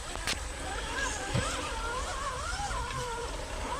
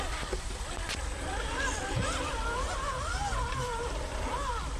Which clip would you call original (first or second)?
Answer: second